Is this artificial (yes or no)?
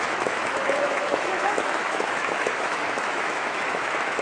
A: yes